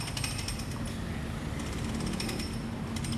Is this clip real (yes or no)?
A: yes